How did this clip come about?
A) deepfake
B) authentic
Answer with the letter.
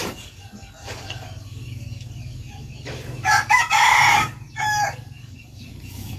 A